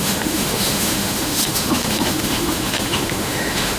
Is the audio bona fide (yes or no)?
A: no